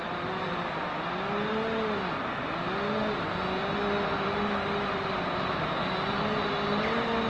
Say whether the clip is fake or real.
real